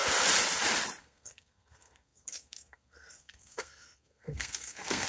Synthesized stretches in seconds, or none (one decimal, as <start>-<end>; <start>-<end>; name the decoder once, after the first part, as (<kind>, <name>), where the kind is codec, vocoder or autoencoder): 1.0-5.1 (codec, SNAC)